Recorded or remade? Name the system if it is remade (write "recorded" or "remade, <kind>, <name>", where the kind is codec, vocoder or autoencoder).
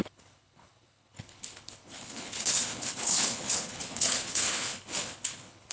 remade, codec, HILCodec